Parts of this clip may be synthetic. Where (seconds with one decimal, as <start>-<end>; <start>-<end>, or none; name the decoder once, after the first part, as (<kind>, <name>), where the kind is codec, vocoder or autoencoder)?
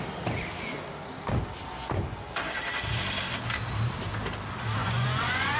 4.8-5.6 (vocoder, Vocos)